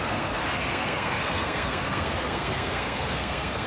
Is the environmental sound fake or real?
fake